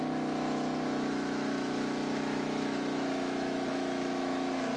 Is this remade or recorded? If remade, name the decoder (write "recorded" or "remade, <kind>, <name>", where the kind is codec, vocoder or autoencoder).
remade, autoencoder, DAC-VAE